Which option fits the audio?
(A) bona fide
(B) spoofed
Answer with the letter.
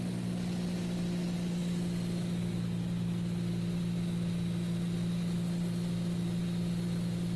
A